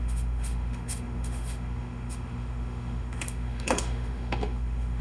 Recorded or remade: remade